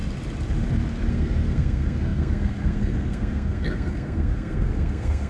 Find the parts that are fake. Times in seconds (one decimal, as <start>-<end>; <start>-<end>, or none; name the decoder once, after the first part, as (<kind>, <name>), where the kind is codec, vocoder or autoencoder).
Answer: 1.1-5.3 (codec, SNAC)